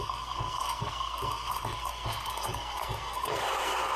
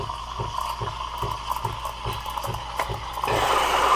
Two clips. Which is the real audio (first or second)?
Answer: second